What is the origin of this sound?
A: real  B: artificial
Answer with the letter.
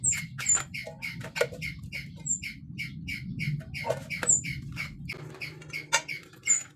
A